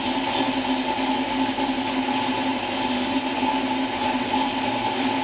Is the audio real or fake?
real